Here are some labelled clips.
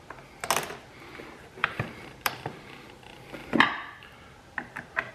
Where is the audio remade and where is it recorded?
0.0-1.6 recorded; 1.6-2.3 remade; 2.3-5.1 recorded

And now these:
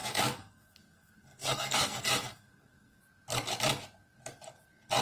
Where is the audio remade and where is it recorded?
0.0-3.0 remade; 3.0-5.0 recorded

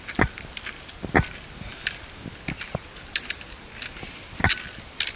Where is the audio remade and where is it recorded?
0.0-5.2 recorded